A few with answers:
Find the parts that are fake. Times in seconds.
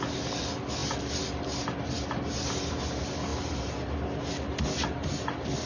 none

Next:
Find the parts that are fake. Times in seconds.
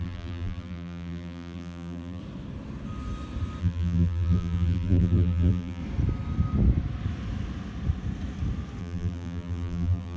0.0-2.2; 3.6-5.8; 8.8-10.2